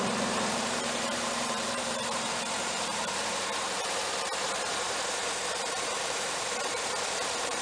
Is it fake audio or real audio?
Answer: fake